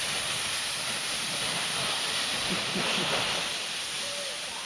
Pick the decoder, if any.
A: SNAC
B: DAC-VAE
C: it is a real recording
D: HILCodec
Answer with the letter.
C